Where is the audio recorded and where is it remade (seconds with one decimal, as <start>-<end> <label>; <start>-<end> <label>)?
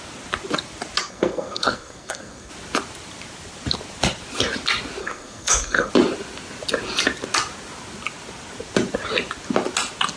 0.0-1.0 recorded; 1.0-2.5 remade; 2.5-5.0 recorded; 5.0-5.9 remade; 5.9-10.2 recorded